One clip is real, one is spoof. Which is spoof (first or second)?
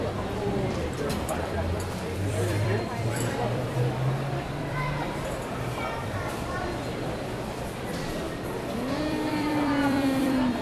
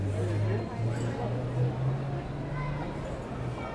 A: first